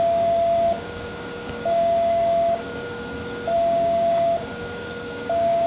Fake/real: fake